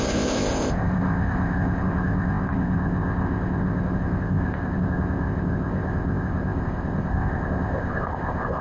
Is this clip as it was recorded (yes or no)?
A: no